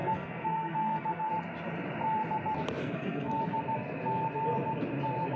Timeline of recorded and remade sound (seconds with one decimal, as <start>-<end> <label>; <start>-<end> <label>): 0.0-1.3 remade; 1.3-2.8 recorded; 2.8-3.4 remade; 3.4-5.4 recorded

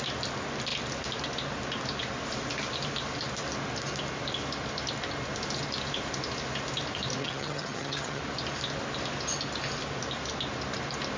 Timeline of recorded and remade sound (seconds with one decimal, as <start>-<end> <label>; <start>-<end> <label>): 0.0-7.2 recorded; 7.2-8.2 remade; 8.2-11.2 recorded

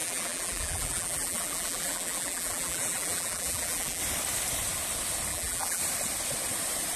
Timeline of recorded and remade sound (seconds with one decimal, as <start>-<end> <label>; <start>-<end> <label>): 0.0-4.0 remade; 4.0-5.3 recorded; 5.3-5.8 remade; 5.8-7.0 recorded

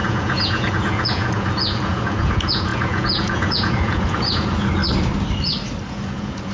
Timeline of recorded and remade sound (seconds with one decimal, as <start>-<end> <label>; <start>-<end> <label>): 0.0-4.8 remade; 4.8-5.9 recorded; 5.9-6.5 remade

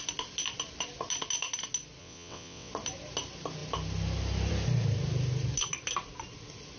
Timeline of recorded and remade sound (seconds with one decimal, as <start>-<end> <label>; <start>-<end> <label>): 0.0-2.0 recorded; 2.0-2.7 remade; 2.7-6.8 recorded